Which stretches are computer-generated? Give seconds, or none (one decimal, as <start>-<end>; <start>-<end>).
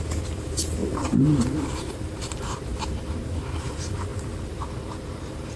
0.0-5.6